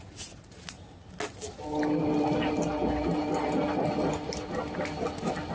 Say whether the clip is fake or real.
real